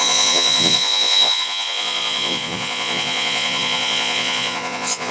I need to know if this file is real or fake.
fake